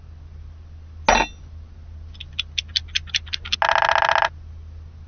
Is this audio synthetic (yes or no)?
no